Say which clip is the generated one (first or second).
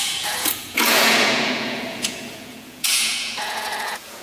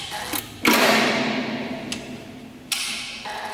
first